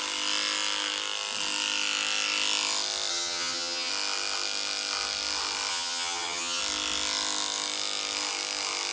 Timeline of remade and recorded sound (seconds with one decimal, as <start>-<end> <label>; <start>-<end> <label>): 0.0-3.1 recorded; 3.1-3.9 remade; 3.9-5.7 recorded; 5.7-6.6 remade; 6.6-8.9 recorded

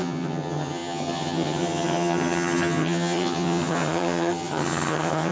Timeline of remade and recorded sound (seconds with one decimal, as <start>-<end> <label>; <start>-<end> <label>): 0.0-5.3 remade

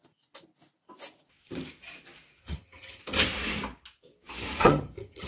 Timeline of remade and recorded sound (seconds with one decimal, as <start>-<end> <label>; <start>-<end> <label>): 0.0-2.4 recorded; 2.4-3.0 remade; 3.0-4.6 recorded; 4.6-5.3 remade